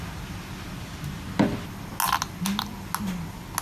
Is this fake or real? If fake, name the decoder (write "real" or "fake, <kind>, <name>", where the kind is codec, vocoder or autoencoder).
real